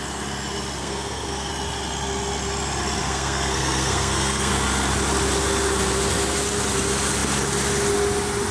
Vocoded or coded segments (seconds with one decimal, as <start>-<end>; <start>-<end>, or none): 0.8-1.5; 3.0-4.5